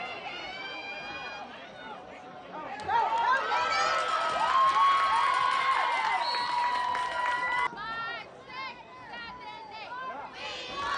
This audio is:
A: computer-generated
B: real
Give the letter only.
B